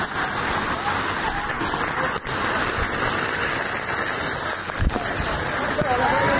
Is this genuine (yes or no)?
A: yes